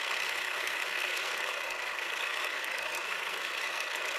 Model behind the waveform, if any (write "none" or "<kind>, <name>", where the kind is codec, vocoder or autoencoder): codec, SNAC